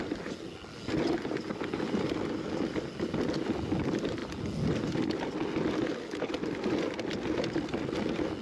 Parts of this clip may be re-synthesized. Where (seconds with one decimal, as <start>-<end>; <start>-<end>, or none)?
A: none